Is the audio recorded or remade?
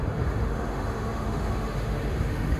remade